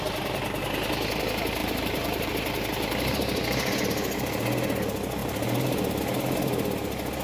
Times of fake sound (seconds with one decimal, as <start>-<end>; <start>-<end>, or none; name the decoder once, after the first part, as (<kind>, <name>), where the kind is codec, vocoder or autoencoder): 1.6-2.3 (vocoder, BigVGAN v2); 5.2-6.0